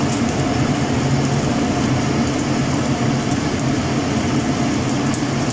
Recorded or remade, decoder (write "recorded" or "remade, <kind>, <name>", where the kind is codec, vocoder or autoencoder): recorded